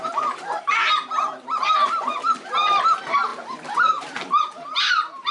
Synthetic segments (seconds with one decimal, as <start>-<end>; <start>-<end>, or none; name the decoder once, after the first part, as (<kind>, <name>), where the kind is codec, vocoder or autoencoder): 0.0-5.3 (vocoder, BigVGAN v2)